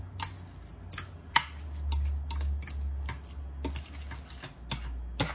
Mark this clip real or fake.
real